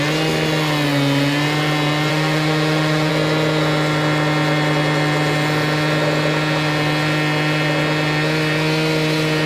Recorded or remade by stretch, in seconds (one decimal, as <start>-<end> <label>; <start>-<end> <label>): 0.0-2.1 recorded; 2.1-3.1 remade; 3.1-9.5 recorded